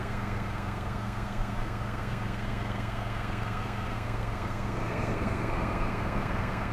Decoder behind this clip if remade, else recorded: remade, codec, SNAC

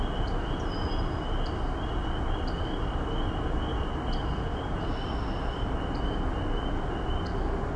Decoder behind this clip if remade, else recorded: recorded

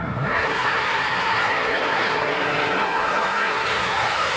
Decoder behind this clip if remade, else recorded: remade, codec, SNAC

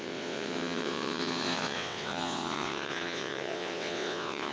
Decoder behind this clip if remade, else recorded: remade, vocoder, WaveNeXt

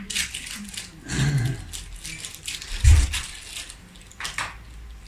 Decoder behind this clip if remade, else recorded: recorded